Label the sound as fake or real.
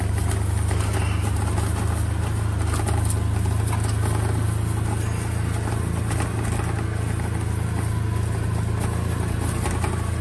real